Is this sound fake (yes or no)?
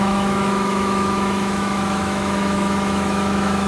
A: yes